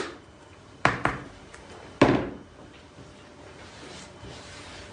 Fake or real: fake